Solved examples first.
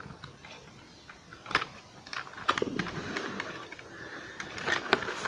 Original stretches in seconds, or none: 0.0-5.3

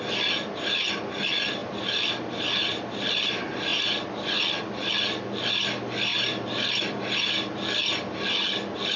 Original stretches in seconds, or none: 0.0-6.1; 6.7-9.0

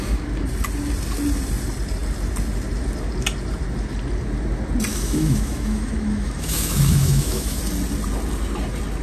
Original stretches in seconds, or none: 0.0-4.9; 7.6-9.0

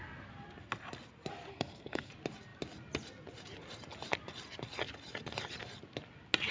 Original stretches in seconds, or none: 0.0-1.5; 2.1-6.5